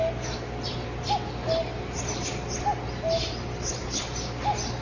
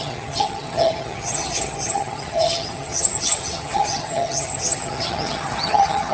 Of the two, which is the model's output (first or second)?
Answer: second